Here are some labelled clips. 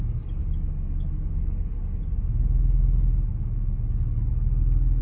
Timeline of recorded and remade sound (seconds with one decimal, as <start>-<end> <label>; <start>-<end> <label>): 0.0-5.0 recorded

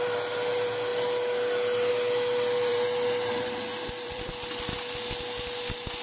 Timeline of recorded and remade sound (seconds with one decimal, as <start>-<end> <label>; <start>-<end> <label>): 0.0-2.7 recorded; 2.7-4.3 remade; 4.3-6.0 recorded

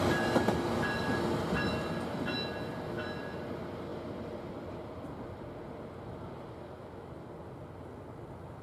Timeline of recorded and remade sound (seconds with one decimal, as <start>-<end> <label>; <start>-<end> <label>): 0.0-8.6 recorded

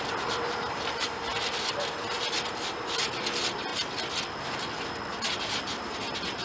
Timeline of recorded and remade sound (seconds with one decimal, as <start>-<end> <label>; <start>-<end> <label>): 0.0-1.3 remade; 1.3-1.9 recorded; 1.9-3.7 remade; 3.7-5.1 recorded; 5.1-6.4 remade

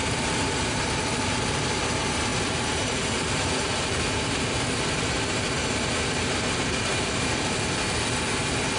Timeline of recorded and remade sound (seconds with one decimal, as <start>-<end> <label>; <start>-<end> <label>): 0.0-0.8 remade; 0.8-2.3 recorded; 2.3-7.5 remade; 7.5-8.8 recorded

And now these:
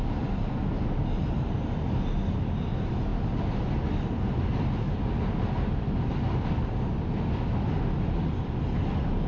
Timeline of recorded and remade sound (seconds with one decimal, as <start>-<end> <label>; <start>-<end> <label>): 0.0-9.3 recorded

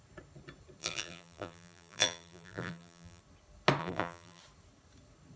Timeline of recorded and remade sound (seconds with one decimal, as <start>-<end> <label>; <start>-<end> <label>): 0.0-0.8 recorded; 0.8-3.2 remade; 3.2-3.8 recorded; 3.8-4.4 remade; 4.4-5.4 recorded

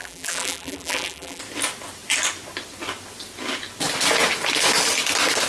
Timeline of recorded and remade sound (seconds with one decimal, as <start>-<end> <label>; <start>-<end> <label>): 0.0-1.4 remade; 1.4-5.5 recorded